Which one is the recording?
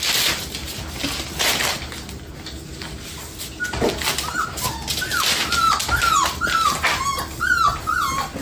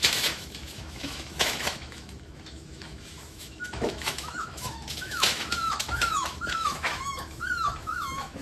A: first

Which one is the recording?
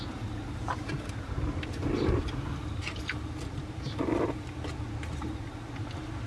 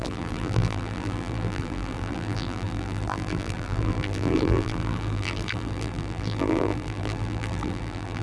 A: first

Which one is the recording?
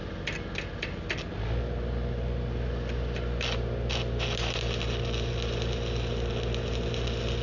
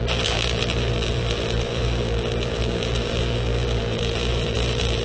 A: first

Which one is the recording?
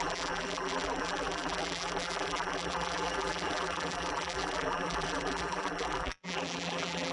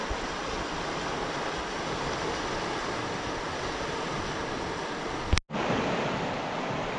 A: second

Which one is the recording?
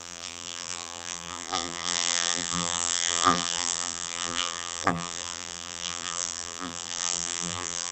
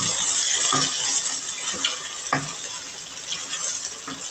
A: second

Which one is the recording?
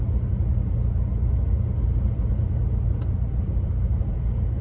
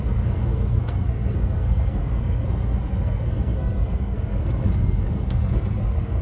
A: first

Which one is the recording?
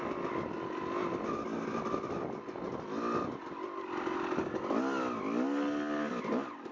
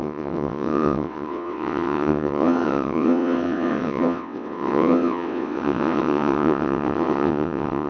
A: first